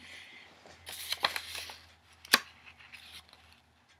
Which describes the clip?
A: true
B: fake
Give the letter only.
A